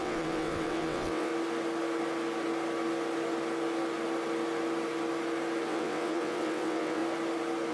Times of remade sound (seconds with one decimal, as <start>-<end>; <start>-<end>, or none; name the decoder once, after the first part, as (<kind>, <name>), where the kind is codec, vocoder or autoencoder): 0.0-1.3 (vocoder, WaveNeXt); 5.7-7.0